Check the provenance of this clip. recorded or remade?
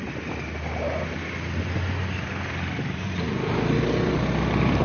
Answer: recorded